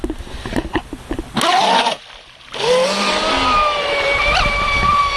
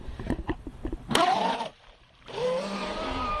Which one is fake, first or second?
second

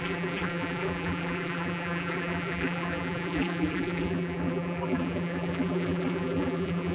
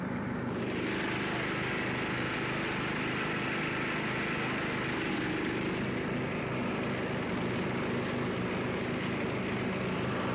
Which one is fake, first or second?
first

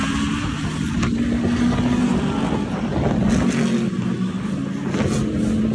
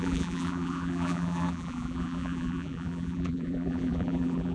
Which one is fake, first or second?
second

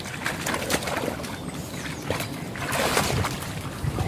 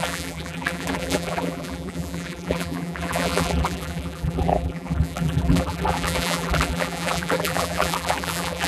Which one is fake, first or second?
second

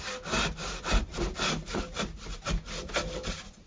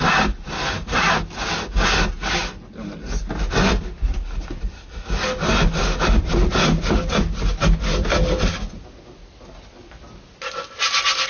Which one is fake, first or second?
first